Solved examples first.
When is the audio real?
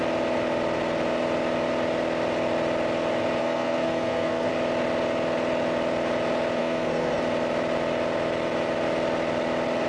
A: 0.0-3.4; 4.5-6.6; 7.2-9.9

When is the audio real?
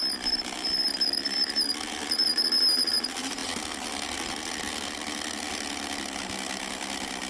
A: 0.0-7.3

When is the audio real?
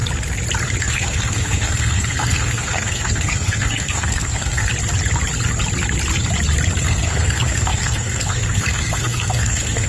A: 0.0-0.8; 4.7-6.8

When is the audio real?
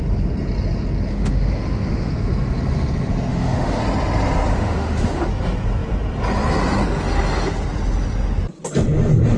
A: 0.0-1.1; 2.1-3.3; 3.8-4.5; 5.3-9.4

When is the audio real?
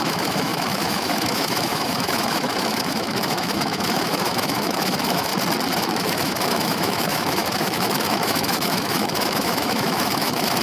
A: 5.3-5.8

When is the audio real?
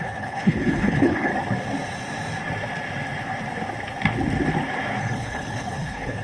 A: 1.3-5.0